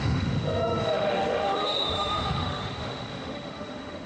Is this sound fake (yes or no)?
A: yes